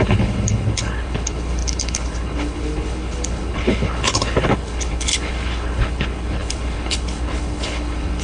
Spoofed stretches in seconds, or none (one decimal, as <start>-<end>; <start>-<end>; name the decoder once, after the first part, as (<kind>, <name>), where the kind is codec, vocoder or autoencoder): 0.0-8.2 (codec, HILCodec)